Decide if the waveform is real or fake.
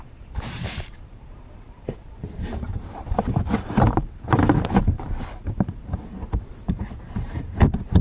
fake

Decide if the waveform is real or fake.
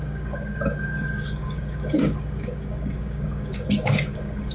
fake